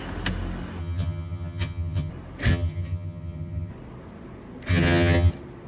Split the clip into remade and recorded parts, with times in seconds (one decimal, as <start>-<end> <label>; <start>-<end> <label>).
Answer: 0.0-0.8 recorded; 0.8-2.1 remade; 2.1-2.5 recorded; 2.5-3.7 remade; 3.7-4.7 recorded; 4.7-5.3 remade; 5.3-5.7 recorded